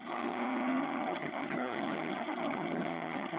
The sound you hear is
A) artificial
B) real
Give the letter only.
A